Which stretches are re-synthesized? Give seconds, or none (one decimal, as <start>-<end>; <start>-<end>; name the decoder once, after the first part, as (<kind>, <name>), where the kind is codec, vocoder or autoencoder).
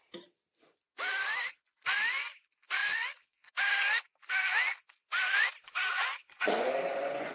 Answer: 2.8-3.5 (vocoder, Vocos); 5.4-7.3